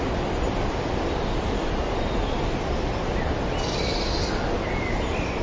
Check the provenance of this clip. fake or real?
real